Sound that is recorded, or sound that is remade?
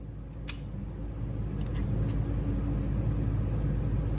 recorded